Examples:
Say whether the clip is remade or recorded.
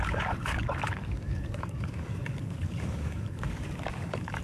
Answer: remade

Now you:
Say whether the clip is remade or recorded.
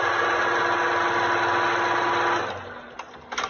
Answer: recorded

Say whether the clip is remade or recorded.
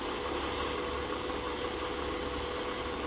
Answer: recorded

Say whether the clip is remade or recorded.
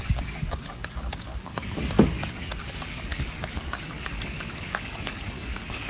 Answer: remade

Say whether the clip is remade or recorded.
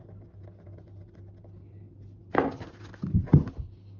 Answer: recorded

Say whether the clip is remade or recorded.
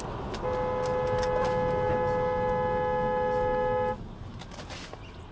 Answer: recorded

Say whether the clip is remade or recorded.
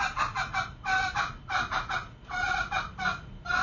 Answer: recorded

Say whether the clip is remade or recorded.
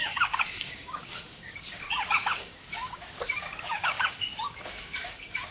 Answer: remade